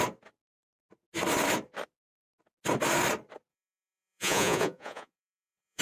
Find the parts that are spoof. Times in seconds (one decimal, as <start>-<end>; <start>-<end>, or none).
3.5-5.8